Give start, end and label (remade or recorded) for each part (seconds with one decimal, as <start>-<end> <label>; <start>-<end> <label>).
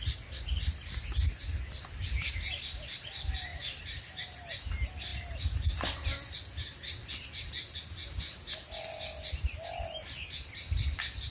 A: 0.0-11.3 recorded